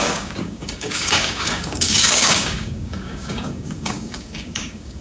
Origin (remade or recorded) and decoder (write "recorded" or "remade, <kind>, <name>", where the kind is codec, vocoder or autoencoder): remade, codec, DAC